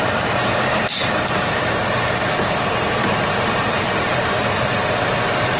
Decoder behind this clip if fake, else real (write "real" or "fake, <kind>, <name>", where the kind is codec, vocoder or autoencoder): fake, vocoder, BigVGAN v2